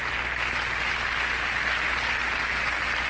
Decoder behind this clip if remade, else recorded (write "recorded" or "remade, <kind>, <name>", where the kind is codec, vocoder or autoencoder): recorded